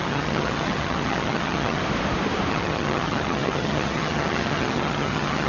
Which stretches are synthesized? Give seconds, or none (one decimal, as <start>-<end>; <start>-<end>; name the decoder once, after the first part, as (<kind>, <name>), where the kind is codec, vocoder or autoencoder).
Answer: 0.0-1.8 (vocoder, HiFi-GAN); 2.5-5.5